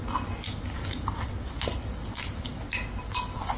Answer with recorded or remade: recorded